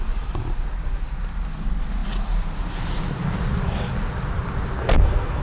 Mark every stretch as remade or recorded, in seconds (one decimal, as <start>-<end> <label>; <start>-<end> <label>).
0.0-4.8 recorded; 4.8-5.4 remade

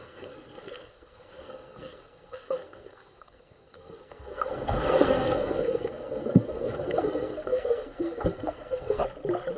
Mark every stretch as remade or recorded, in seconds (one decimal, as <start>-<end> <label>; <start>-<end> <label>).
0.0-9.0 remade; 9.0-9.6 recorded

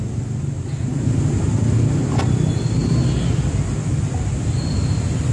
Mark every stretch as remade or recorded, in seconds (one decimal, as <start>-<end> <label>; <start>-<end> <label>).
0.0-5.3 recorded

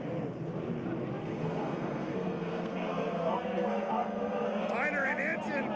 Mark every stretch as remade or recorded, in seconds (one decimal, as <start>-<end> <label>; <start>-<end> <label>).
0.0-1.2 recorded; 1.2-4.7 remade; 4.7-5.8 recorded

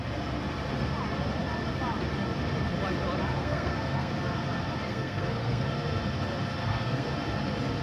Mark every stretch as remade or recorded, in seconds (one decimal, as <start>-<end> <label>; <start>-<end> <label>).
0.0-3.4 recorded; 3.4-4.1 remade; 4.1-4.9 recorded; 4.9-5.7 remade; 5.7-6.6 recorded; 6.6-7.1 remade; 7.1-7.8 recorded

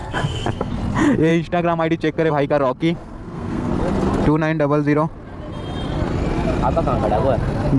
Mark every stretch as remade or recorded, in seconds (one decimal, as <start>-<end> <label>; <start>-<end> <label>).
0.0-0.7 remade; 0.7-3.0 recorded; 3.0-3.7 remade; 3.7-7.8 recorded

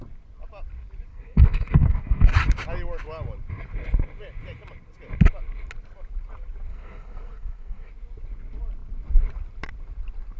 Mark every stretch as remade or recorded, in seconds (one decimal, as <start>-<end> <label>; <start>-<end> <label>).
0.0-1.1 recorded; 1.1-2.3 remade; 2.3-6.7 recorded; 6.7-7.9 remade; 7.9-10.4 recorded

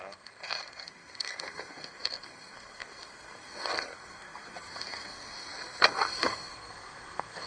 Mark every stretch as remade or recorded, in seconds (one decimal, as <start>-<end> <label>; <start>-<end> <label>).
0.0-7.5 remade